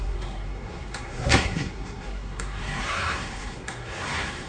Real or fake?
fake